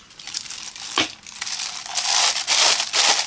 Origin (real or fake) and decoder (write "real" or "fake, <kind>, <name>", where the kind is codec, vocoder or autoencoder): real